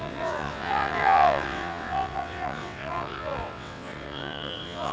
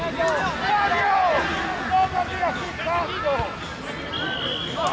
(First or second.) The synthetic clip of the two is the first